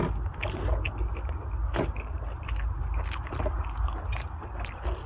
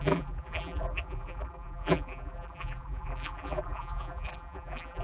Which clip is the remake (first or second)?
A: second